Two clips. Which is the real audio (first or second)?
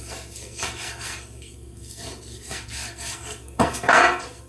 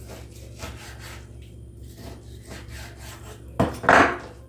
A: second